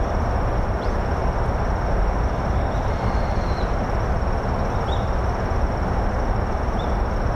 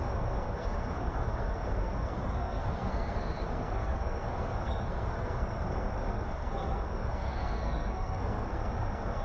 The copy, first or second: second